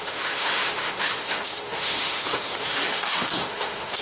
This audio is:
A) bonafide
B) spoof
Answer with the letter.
B